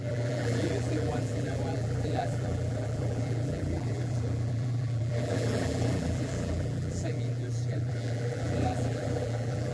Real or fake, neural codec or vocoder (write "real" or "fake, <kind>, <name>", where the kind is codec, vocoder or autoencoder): fake, vocoder, BigVGAN v2